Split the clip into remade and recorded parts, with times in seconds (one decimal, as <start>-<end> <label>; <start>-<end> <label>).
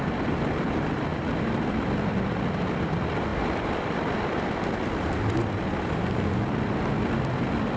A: 0.0-1.1 recorded; 1.1-2.7 remade; 2.7-3.3 recorded; 3.3-4.5 remade; 4.5-7.8 recorded